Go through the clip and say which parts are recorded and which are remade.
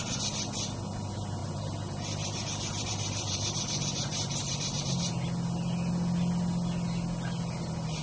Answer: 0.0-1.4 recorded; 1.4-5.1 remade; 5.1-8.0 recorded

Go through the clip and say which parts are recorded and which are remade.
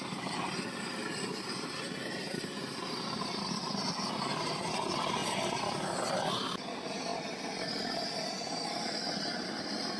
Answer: 0.0-5.2 remade; 5.2-6.2 recorded; 6.2-7.1 remade; 7.1-8.5 recorded; 8.5-10.0 remade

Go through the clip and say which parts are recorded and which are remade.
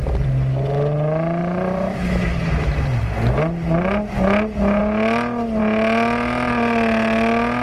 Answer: 0.0-1.4 recorded; 1.4-3.0 remade; 3.0-7.6 recorded